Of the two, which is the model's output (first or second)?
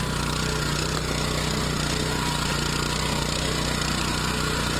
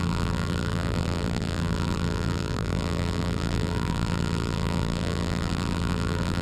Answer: second